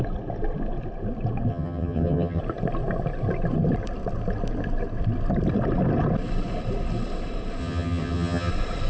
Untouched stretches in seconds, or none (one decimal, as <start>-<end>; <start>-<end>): 0.0-1.5; 2.4-7.6; 8.5-8.9